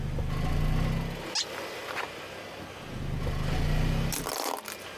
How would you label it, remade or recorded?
recorded